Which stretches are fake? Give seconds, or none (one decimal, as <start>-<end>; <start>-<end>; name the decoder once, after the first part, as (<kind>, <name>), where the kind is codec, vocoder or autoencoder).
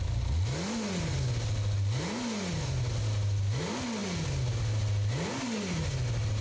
none